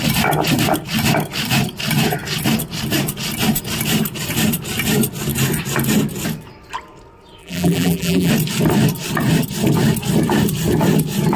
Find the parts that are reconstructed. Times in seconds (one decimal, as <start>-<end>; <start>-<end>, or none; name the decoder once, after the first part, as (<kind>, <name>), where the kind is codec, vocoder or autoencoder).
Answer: 7.4-8.3 (vocoder, BigVGAN v2)